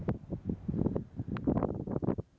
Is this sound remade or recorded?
recorded